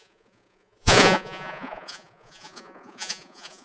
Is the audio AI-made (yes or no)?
yes